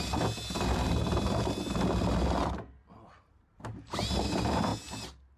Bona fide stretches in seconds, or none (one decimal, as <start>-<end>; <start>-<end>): 0.0-5.4